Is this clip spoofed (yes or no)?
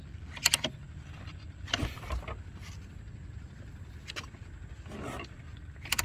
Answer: no